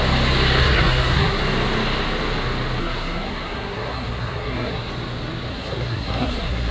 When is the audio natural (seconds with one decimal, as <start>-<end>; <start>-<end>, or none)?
0.0-0.6; 1.4-2.8; 4.9-5.5